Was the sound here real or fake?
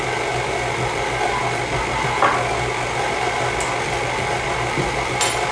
real